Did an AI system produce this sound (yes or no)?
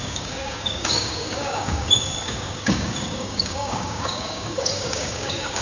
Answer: yes